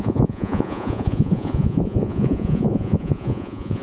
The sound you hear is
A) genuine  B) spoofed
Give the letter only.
B